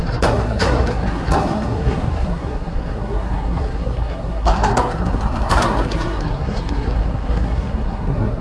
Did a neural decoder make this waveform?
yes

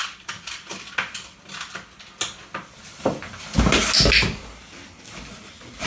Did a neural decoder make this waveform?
no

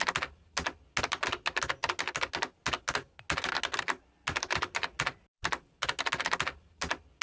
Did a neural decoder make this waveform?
no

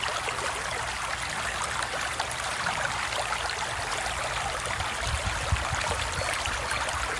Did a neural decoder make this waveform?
no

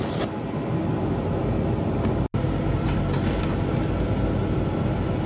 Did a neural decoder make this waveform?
no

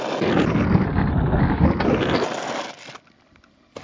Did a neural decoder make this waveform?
no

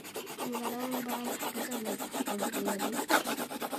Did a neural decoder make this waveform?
no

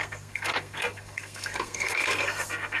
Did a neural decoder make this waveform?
yes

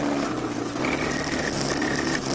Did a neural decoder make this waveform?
no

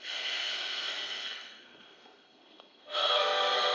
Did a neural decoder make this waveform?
yes